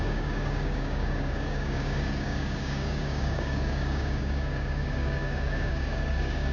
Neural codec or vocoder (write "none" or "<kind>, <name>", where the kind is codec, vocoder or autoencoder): codec, DAC